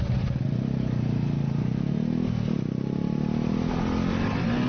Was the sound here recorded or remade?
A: recorded